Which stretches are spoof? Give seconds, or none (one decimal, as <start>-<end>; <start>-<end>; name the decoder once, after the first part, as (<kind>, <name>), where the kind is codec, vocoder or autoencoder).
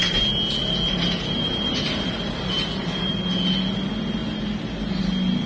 0.6-3.1 (vocoder, BigVGAN v2); 4.2-5.0